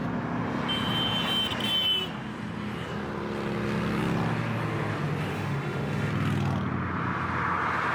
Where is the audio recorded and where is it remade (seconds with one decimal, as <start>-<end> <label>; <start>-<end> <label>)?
0.0-5.3 recorded; 5.3-6.1 remade; 6.1-7.9 recorded